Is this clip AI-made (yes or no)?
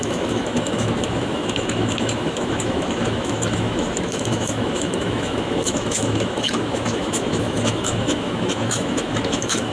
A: yes